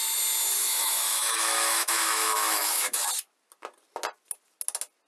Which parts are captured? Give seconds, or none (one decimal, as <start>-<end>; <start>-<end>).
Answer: 0.0-0.6; 3.1-5.1